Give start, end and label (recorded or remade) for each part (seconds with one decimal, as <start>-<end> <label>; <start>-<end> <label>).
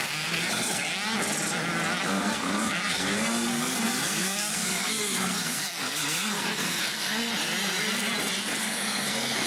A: 0.0-0.9 remade; 0.9-2.0 recorded; 2.0-7.3 remade; 7.3-8.6 recorded; 8.6-9.5 remade